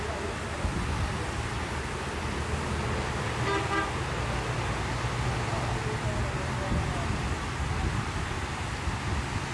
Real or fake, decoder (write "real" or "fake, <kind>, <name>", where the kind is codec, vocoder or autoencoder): real